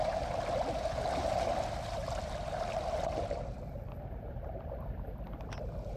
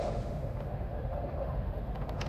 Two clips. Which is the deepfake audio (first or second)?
second